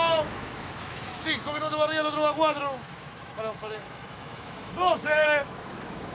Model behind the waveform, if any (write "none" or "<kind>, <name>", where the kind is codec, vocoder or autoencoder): autoencoder, DAC-VAE